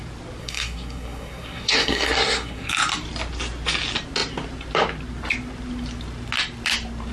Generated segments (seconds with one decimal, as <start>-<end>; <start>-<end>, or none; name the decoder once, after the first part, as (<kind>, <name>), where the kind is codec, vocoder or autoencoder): 0.4-2.7 (codec, SNAC)